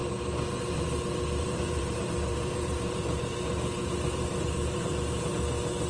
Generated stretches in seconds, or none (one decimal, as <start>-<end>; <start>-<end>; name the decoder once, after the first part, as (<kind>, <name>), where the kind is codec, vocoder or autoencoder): 1.4-4.9 (vocoder, BigVGAN v2)